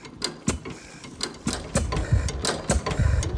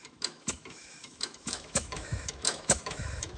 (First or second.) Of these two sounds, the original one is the first